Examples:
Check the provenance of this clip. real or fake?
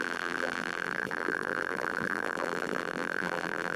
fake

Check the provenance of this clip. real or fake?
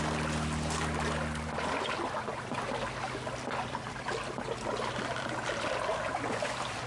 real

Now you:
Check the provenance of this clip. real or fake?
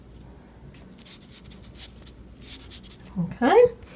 real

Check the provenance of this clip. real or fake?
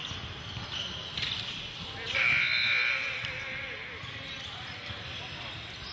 real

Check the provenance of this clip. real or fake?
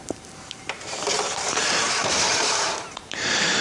fake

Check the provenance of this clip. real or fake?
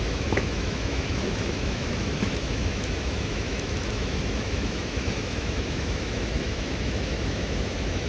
fake